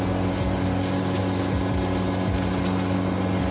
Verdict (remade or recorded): recorded